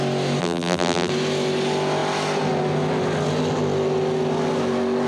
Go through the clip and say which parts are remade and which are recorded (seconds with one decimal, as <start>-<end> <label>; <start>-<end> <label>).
0.0-0.4 recorded; 0.4-1.1 remade; 1.1-5.1 recorded

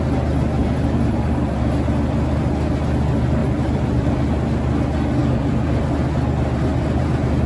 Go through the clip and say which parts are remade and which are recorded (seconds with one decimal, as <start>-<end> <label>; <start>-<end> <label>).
0.0-0.6 recorded; 0.6-1.7 remade; 1.7-3.4 recorded; 3.4-4.1 remade; 4.1-5.2 recorded; 5.2-5.9 remade; 5.9-6.7 recorded; 6.7-7.5 remade